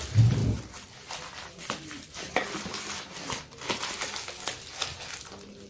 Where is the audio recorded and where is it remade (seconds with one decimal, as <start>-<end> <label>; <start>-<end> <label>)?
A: 0.0-5.7 recorded